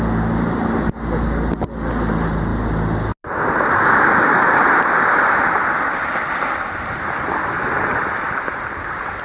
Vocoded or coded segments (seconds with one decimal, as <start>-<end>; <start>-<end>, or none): none